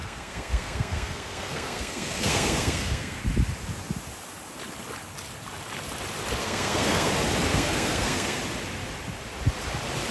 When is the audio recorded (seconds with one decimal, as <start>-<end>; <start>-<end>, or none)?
3.2-6.4; 7.1-7.5; 8.4-10.1